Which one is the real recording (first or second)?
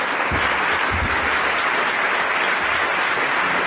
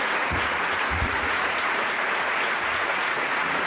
first